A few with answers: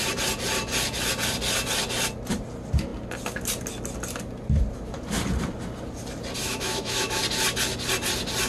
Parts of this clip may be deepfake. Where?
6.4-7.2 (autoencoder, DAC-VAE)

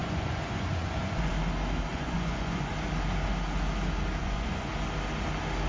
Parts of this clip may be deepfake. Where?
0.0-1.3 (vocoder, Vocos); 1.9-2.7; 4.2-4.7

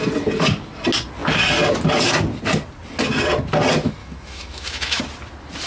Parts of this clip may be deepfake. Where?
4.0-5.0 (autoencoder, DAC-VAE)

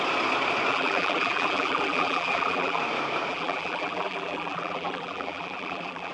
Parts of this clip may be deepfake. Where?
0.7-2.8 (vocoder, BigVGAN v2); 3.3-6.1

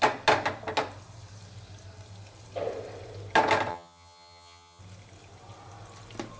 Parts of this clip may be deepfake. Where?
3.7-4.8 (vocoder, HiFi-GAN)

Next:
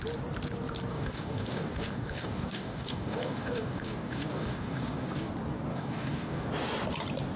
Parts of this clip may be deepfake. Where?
0.9-5.3 (codec, DAC); 5.7-6.5

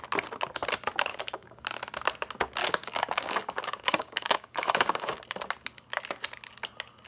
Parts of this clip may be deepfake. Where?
1.1-1.6 (codec, DAC); 2.6-5.2

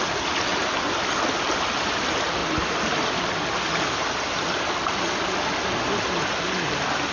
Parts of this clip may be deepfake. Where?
none